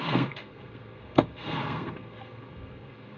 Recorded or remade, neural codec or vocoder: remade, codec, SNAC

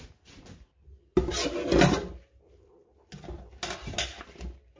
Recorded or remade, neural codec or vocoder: recorded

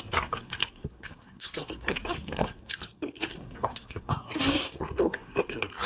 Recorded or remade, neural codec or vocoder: remade, codec, SNAC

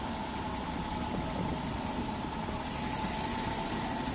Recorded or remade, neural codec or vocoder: recorded